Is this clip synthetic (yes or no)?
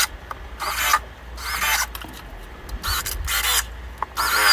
no